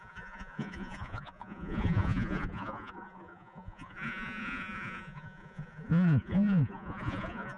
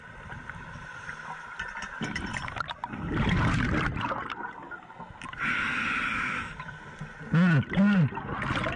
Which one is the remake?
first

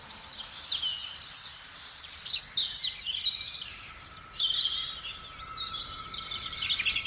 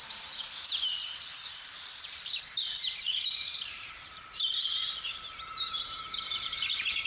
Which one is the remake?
second